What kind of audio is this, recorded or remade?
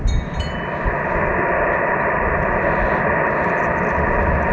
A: recorded